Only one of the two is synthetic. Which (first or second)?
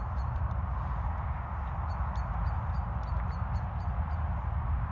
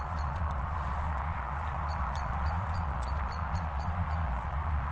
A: second